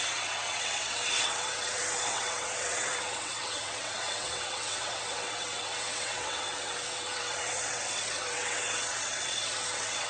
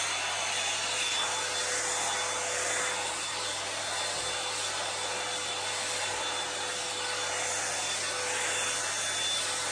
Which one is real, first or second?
second